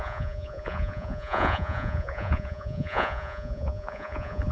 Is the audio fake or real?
fake